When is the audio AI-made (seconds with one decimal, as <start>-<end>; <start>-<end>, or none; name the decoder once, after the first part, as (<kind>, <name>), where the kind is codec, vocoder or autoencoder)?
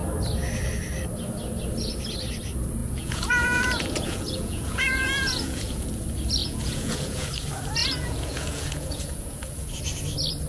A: 2.8-5.9 (vocoder, Vocos); 6.4-7.3; 7.8-9.7